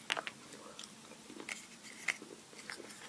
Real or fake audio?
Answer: real